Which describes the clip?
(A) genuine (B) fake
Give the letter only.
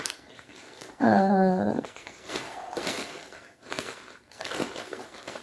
B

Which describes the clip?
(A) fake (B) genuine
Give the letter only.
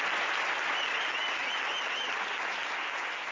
B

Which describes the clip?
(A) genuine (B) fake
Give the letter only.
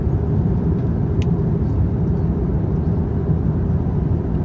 A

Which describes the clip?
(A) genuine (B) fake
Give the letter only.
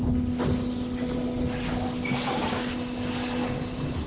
A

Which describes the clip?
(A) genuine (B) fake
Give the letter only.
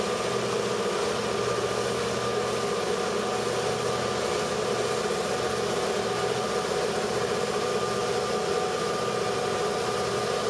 A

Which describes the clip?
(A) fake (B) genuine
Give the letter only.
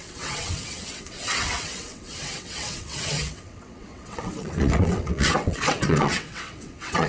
A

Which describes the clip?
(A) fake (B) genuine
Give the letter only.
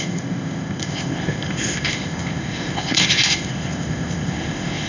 A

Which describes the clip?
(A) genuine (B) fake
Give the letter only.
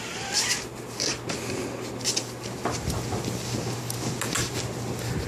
A